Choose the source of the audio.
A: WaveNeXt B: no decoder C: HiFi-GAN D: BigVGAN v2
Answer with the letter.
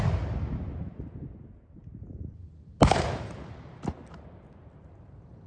B